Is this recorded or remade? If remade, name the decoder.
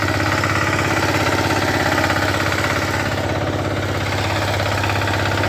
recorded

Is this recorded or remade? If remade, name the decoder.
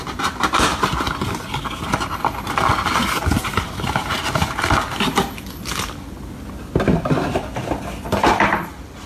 recorded